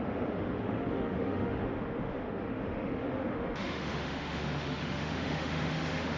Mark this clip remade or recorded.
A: remade